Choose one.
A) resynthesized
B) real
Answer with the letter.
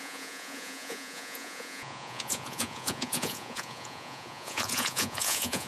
A